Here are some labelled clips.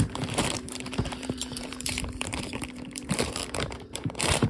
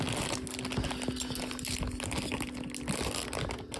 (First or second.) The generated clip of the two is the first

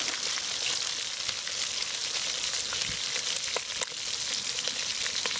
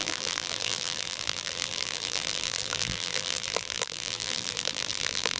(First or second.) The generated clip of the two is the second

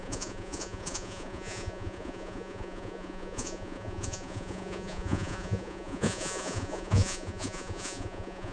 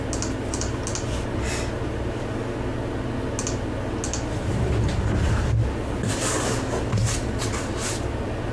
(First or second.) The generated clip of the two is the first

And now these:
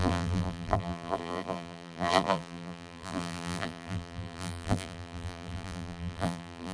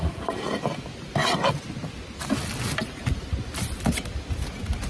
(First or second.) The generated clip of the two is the first